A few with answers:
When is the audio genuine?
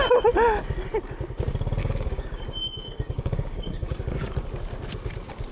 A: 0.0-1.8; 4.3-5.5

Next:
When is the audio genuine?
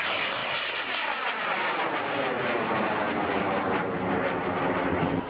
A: 0.0-5.3